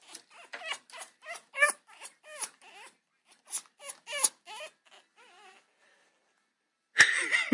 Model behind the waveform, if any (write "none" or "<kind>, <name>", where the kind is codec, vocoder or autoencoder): none